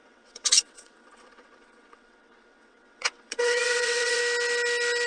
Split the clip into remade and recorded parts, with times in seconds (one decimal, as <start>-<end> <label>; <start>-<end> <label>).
0.0-4.2 remade; 4.2-5.1 recorded